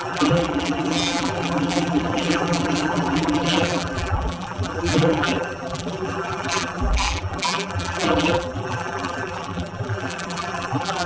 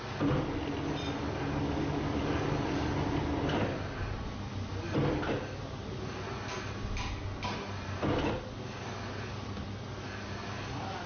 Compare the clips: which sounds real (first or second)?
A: second